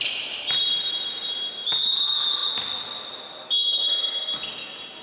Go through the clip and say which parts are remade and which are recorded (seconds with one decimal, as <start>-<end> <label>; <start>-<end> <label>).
0.0-5.0 recorded